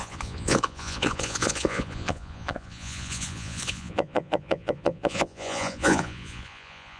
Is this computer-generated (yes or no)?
yes